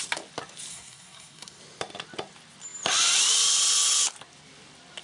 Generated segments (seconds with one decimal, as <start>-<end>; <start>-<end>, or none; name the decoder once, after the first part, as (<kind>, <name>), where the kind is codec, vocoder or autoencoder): 0.7-1.6 (codec, SNAC)